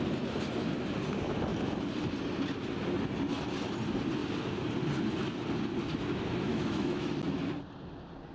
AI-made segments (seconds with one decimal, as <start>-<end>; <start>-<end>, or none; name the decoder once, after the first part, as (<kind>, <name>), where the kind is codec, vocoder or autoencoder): 6.5-7.1 (autoencoder, DAC-VAE)